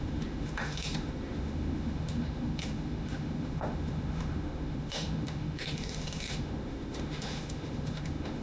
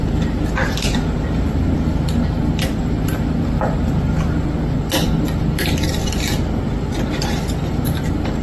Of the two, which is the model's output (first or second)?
first